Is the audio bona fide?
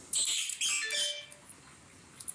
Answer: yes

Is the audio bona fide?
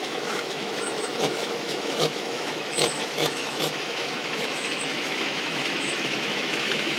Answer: no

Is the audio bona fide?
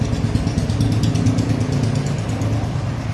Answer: yes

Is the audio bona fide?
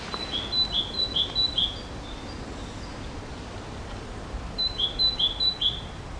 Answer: yes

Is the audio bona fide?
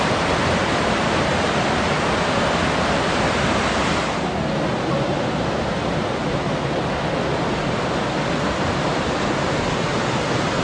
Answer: yes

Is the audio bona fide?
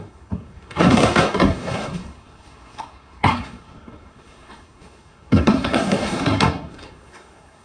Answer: no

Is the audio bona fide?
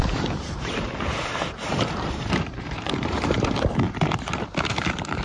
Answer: no